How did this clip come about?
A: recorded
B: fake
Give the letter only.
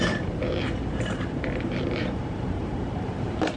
B